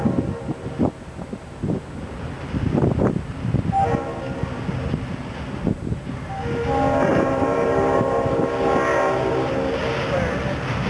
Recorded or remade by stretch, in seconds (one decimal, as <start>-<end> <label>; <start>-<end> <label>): 0.0-7.1 recorded; 7.1-8.5 remade; 8.5-10.9 recorded

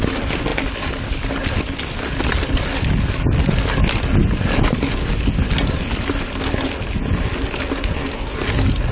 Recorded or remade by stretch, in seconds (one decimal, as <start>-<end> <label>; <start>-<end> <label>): 0.0-8.9 recorded

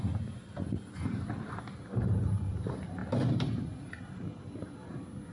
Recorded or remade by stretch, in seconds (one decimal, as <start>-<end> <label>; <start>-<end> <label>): 0.0-5.3 recorded

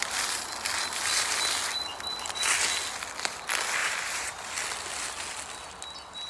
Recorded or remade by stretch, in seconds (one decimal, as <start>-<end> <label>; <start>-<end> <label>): 0.0-3.8 recorded; 3.8-4.5 remade; 4.5-6.3 recorded

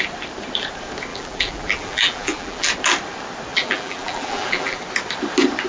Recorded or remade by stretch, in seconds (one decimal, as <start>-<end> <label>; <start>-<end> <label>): 0.0-1.1 recorded; 1.1-2.7 remade; 2.7-3.5 recorded; 3.5-4.8 remade; 4.8-5.7 recorded

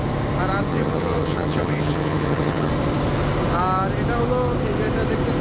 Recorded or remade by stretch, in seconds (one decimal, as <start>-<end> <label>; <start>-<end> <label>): 0.0-0.7 recorded; 0.7-2.7 remade; 2.7-5.4 recorded

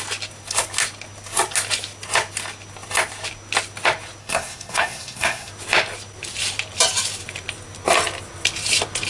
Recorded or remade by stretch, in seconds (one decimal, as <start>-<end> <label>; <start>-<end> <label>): 0.0-4.2 recorded; 4.2-5.5 remade; 5.5-9.1 recorded

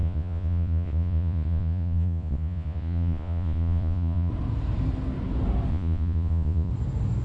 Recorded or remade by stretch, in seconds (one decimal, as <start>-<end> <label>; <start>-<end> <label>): 0.0-4.3 remade; 4.3-5.7 recorded; 5.7-6.7 remade; 6.7-7.2 recorded